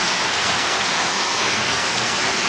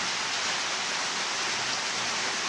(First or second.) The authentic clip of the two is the second